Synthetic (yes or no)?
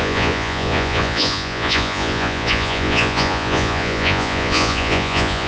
yes